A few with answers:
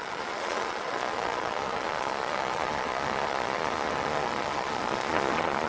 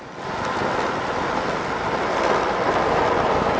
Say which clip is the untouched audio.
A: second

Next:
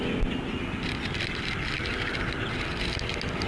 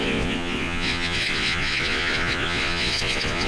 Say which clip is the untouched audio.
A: first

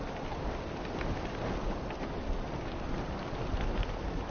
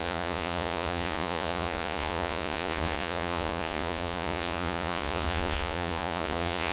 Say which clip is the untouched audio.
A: first